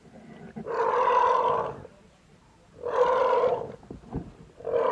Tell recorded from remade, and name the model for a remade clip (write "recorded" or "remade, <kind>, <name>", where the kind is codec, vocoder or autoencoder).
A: remade, vocoder, BigVGAN v2